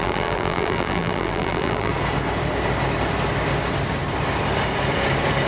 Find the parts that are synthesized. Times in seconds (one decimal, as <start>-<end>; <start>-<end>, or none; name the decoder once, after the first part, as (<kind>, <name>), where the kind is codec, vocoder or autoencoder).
0.0-1.9 (vocoder, BigVGAN v2)